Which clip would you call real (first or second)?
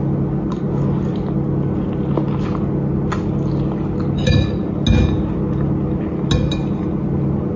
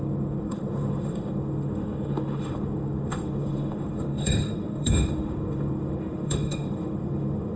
first